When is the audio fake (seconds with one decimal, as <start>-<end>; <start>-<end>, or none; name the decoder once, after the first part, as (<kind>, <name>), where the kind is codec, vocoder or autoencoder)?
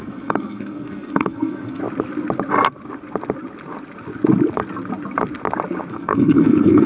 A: 0.0-1.8 (codec, SNAC); 5.9-6.9